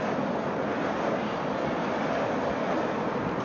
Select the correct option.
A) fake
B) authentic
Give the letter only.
B